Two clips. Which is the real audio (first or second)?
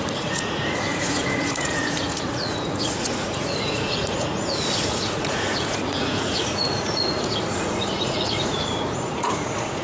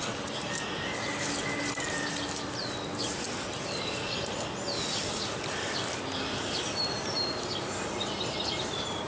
second